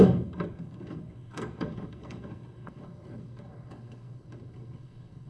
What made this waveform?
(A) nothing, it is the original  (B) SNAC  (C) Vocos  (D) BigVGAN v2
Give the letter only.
B